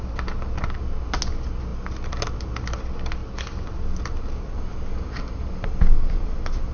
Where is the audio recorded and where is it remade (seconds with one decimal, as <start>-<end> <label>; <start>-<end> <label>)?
0.0-6.7 recorded